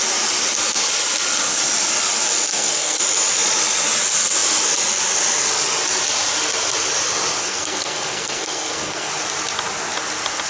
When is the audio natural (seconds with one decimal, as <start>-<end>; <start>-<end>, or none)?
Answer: 0.0-2.5; 3.0-7.4; 9.1-10.5